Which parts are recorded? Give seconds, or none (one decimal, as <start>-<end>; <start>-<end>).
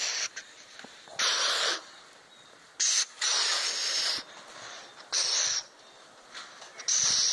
0.0-7.3